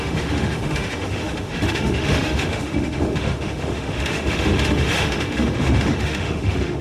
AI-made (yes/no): yes